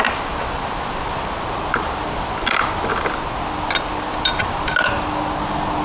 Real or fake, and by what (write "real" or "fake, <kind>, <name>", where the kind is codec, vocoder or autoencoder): real